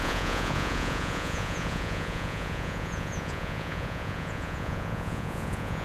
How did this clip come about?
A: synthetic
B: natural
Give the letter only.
A